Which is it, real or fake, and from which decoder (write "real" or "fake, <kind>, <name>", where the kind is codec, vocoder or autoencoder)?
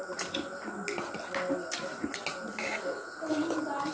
real